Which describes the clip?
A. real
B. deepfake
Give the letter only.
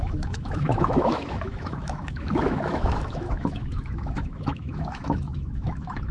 B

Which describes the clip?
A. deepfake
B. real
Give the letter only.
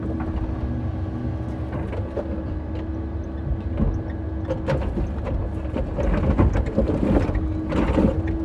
B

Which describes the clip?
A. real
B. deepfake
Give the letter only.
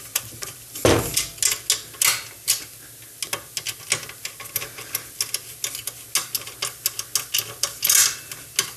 A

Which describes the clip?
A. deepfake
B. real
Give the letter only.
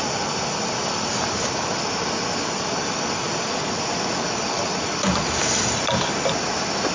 B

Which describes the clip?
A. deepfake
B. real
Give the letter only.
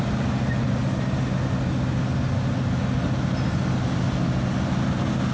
B